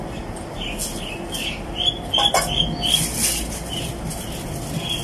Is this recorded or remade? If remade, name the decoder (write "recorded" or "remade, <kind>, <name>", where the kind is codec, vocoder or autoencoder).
recorded